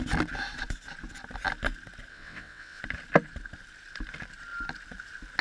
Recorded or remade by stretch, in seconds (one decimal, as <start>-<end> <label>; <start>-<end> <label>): 0.0-2.1 recorded; 2.1-2.8 remade; 2.8-5.4 recorded